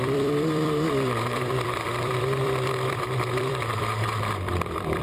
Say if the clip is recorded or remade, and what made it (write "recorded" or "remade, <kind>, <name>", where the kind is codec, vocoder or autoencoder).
remade, vocoder, BigVGAN v2